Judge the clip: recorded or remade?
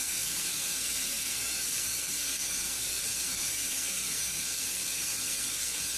remade